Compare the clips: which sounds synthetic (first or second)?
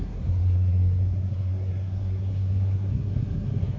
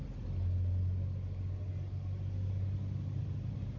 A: first